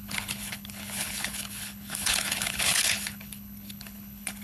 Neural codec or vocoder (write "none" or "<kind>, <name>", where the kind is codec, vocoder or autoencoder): codec, HILCodec